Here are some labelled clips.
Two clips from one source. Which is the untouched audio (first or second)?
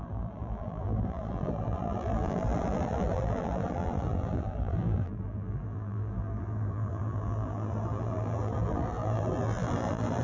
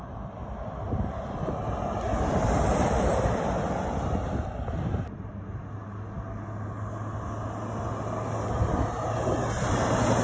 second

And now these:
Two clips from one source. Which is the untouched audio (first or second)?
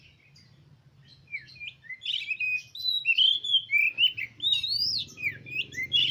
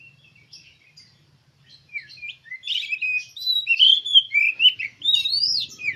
first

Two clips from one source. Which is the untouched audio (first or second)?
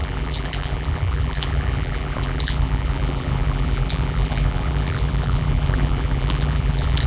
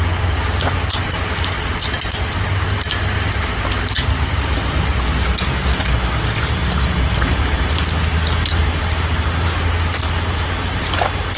second